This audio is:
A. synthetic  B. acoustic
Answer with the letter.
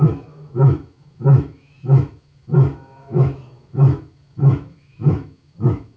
A